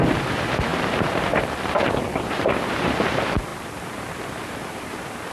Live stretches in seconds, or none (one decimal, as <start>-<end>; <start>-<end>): none